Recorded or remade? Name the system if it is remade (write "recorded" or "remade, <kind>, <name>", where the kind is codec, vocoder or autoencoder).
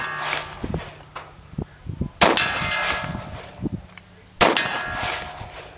recorded